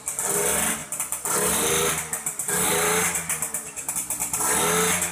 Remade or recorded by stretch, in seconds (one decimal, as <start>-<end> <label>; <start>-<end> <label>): 0.0-0.8 recorded; 0.8-3.9 remade; 3.9-5.1 recorded